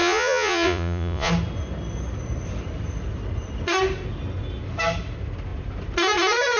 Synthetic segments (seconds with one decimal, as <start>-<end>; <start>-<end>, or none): 0.0-1.3